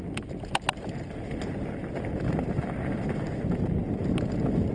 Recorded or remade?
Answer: recorded